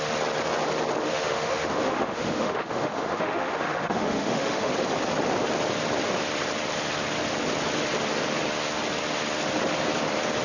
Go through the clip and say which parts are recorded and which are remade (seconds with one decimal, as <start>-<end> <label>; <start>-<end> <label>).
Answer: 0.0-1.0 recorded; 1.0-4.7 remade; 4.7-10.4 recorded